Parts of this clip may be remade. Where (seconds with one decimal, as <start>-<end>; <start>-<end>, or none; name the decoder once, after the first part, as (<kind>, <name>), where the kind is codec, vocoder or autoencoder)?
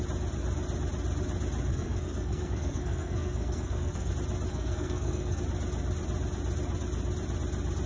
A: 1.7-4.1 (codec, SNAC); 4.5-5.4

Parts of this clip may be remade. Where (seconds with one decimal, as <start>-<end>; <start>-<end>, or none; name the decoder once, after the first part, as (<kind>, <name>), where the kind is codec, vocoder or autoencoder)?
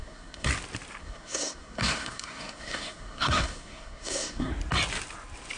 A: 0.0-0.5 (codec, SNAC); 1.0-4.5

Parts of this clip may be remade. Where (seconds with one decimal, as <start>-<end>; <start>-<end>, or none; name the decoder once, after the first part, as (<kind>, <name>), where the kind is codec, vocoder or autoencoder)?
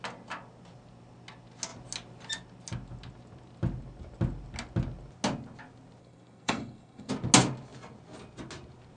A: 6.0-7.1 (codec, SNAC)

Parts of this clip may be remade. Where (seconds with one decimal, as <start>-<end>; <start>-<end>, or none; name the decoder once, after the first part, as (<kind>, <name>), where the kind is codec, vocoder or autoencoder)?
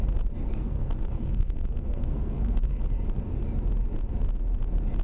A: 0.5-2.8 (codec, SNAC)